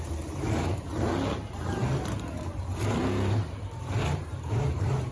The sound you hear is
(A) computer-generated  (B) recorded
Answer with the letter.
A